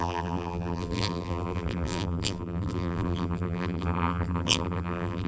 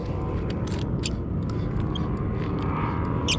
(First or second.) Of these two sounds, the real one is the second